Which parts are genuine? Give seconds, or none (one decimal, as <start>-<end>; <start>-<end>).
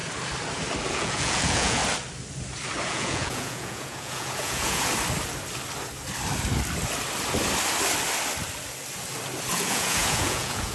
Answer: 0.0-0.9; 1.8-2.9; 4.9-9.5